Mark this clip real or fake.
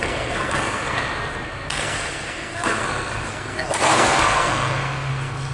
fake